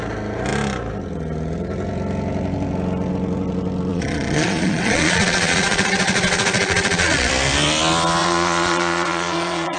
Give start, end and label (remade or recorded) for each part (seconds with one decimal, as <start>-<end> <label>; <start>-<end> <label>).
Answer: 0.0-3.9 recorded; 3.9-7.3 remade; 7.3-8.2 recorded; 8.2-9.8 remade